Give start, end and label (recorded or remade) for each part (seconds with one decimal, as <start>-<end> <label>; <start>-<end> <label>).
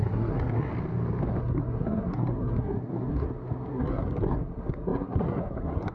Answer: 0.0-0.7 remade; 0.7-1.4 recorded; 1.4-5.9 remade